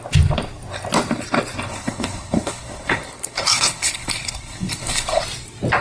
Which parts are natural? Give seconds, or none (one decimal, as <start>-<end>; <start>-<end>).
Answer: 0.0-1.7; 5.2-5.8